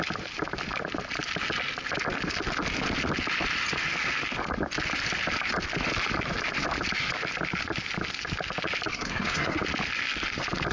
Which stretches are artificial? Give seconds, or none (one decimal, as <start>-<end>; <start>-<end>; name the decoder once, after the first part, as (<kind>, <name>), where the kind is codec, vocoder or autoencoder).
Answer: 8.9-9.6 (codec, SNAC)